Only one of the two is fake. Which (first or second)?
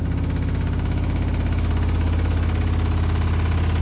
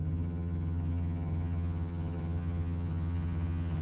second